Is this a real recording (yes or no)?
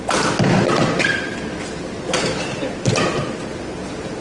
yes